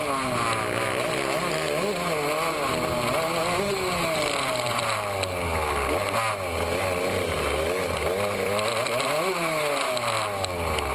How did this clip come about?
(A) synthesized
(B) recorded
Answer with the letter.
B